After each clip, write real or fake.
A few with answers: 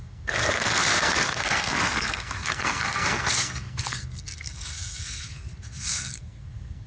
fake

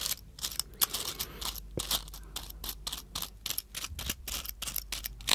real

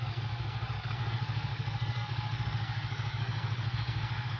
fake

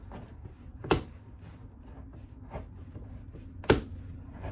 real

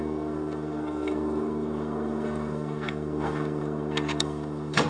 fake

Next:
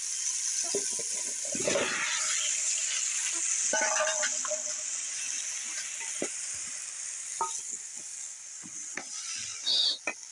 real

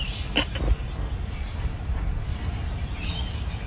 real